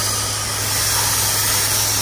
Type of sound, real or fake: real